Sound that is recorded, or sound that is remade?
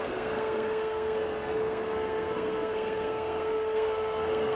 remade